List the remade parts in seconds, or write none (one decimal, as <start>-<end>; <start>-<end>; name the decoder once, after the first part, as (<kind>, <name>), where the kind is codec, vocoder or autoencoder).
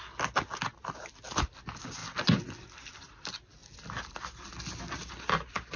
none